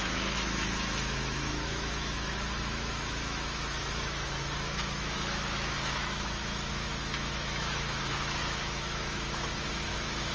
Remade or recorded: remade